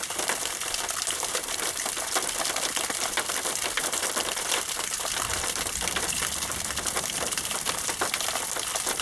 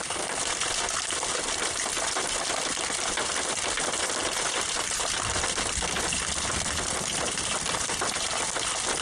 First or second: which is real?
second